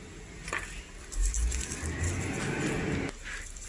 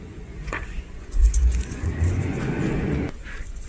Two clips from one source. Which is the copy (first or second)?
second